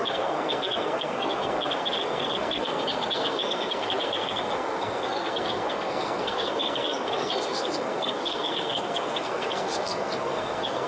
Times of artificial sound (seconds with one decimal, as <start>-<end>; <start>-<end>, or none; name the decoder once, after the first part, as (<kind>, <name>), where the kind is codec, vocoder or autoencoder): 0.0-10.9 (codec, SNAC)